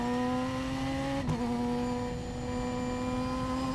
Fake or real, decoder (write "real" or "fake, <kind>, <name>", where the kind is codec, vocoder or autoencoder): real